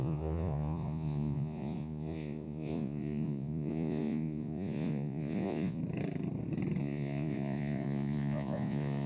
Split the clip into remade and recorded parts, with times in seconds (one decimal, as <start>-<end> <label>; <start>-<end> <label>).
0.0-5.8 remade; 5.8-6.8 recorded; 6.8-9.1 remade